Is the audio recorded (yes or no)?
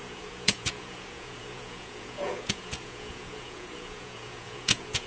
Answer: no